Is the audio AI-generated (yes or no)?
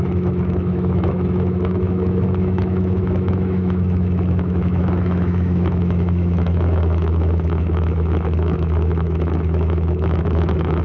yes